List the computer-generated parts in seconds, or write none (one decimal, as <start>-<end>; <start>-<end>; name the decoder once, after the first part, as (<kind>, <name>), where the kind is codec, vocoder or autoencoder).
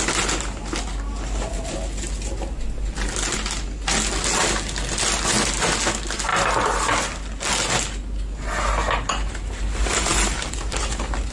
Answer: 10.1-10.8 (vocoder, BigVGAN v2)